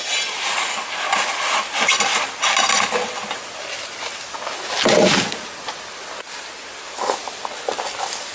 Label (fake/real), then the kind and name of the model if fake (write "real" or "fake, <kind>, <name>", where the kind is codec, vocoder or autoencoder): real